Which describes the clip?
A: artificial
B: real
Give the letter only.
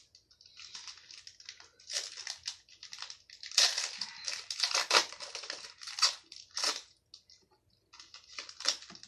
B